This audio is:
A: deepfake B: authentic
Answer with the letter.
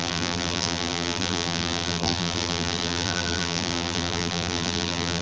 A